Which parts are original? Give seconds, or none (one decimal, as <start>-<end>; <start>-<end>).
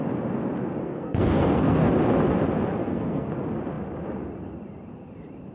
0.0-0.8; 1.9-2.8; 3.3-5.5